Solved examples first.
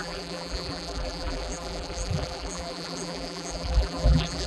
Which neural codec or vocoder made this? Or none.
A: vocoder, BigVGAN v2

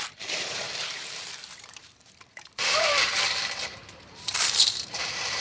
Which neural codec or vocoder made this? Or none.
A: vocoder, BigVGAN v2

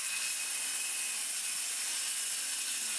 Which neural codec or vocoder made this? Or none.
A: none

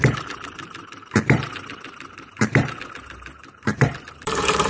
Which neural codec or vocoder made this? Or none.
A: vocoder, BigVGAN v2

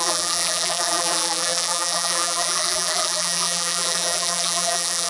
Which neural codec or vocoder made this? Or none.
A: vocoder, BigVGAN v2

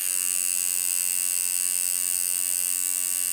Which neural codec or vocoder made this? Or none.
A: none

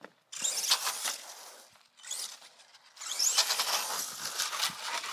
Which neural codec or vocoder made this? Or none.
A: none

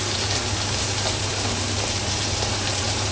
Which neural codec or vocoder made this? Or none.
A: vocoder, BigVGAN v2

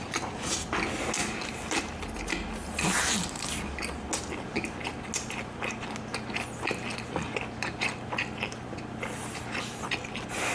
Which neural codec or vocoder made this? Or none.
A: none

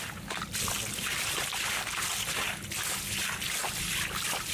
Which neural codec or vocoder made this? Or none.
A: none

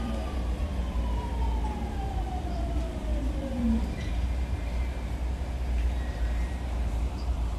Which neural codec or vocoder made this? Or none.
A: vocoder, BigVGAN v2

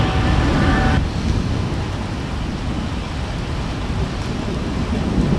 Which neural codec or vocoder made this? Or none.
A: none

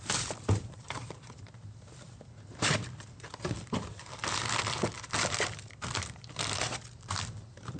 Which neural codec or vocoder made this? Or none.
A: vocoder, BigVGAN v2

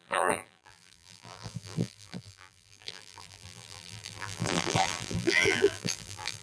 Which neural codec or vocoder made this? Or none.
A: vocoder, BigVGAN v2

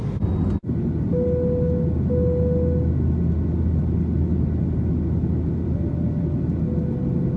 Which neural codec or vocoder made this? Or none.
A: none